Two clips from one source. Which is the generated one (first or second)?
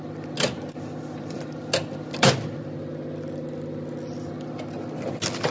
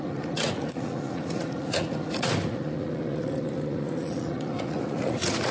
second